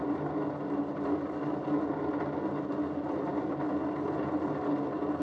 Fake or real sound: real